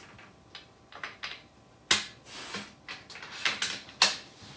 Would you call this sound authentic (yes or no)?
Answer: yes